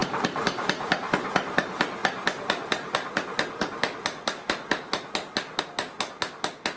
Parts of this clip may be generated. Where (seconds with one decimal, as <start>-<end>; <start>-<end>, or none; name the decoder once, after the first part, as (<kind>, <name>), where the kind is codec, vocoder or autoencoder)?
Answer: 0.0-1.1 (vocoder, BigVGAN v2)